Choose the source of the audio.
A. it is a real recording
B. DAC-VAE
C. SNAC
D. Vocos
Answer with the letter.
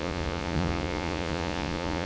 D